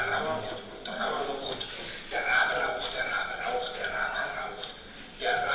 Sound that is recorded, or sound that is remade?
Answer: recorded